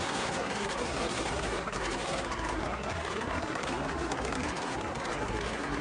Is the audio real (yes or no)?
no